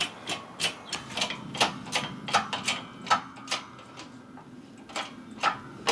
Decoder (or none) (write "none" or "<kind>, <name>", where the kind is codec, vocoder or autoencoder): none